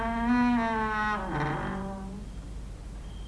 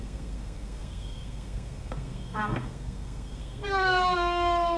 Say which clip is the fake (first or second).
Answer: second